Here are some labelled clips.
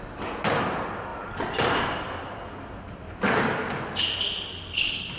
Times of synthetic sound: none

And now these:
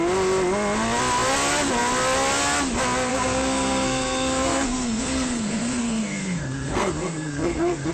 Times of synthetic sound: 3.1-7.9

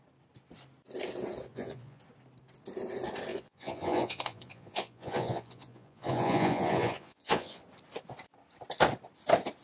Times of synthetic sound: 1.5-2.0; 3.3-7.6

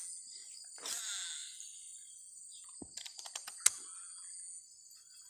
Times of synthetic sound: none